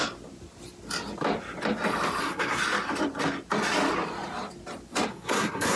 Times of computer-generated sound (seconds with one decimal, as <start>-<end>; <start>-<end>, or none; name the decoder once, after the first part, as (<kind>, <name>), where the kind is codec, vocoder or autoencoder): 2.2-2.6 (codec, SNAC); 5.1-5.8